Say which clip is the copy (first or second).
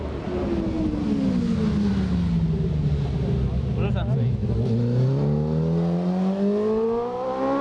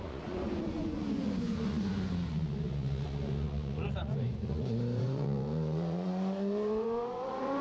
second